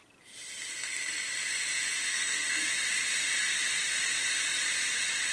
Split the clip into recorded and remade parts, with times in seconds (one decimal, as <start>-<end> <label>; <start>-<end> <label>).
0.0-2.1 recorded; 2.1-2.6 remade; 2.6-5.3 recorded